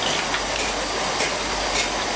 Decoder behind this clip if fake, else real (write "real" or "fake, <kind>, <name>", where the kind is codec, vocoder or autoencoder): real